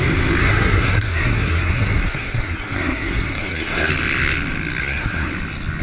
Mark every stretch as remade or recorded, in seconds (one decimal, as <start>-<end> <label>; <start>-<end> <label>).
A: 0.0-0.4 recorded; 0.4-3.9 remade; 3.9-4.8 recorded; 4.8-5.3 remade; 5.3-5.8 recorded